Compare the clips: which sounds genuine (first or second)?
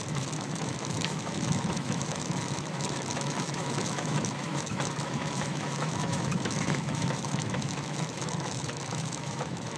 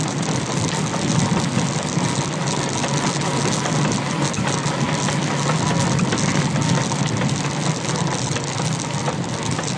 second